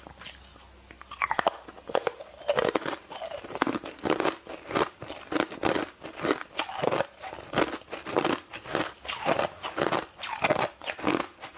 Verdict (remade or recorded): recorded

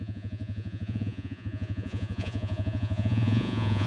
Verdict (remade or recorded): remade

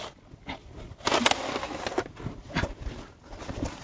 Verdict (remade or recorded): recorded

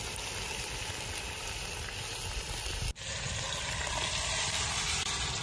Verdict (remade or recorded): recorded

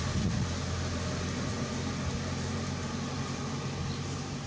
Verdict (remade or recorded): recorded